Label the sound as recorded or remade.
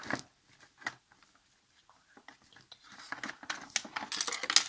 recorded